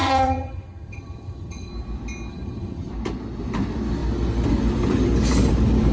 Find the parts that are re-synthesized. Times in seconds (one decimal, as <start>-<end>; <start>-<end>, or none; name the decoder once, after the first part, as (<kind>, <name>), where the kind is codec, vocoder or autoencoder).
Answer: 0.0-1.7 (vocoder, HiFi-GAN); 2.3-2.9